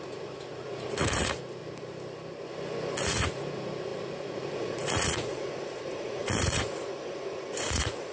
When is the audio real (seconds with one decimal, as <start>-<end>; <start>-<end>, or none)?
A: 1.6-3.0